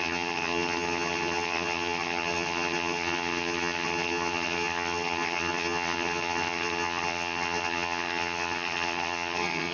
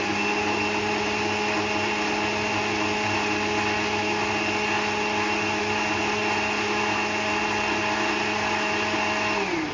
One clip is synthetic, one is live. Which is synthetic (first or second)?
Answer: first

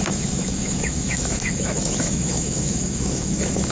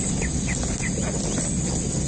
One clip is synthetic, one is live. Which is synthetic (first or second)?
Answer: first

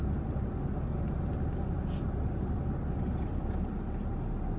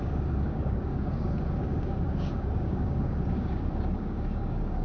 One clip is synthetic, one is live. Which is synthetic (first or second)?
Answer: second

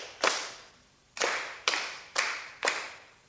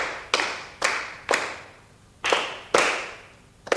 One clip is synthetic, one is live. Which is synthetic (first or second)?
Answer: first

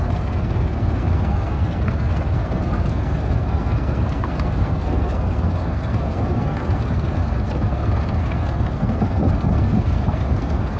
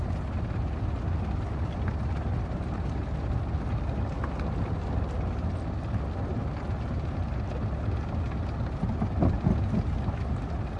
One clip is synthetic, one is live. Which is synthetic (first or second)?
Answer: first